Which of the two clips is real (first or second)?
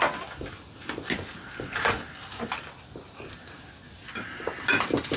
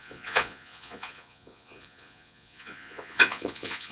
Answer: first